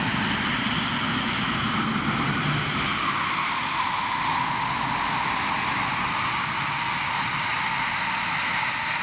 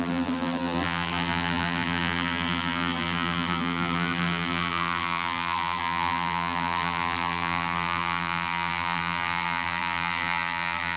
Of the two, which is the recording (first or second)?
first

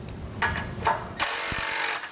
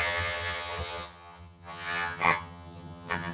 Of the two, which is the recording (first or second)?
first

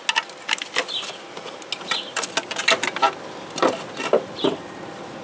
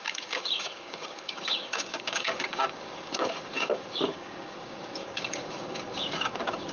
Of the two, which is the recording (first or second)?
first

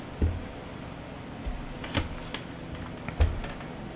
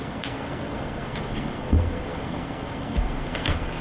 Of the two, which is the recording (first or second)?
first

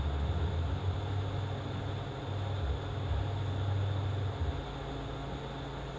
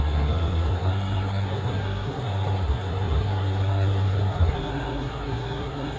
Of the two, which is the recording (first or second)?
first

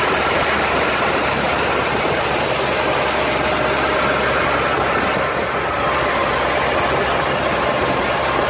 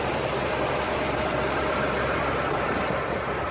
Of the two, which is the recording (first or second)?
first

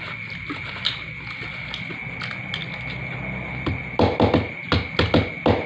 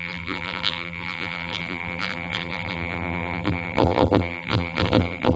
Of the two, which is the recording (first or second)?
first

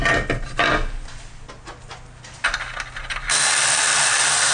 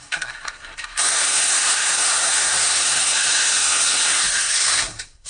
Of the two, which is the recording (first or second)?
first